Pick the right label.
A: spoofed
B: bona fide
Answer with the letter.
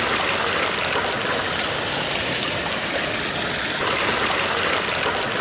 B